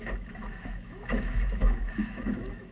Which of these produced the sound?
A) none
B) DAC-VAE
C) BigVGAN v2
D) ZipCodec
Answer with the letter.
B